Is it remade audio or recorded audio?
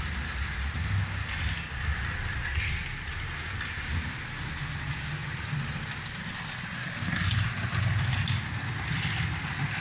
recorded